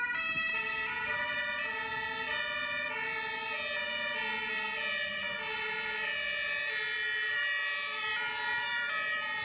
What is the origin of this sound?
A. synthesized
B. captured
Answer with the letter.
B